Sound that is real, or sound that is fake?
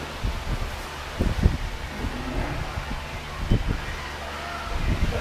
real